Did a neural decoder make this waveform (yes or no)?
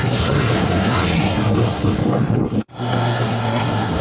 yes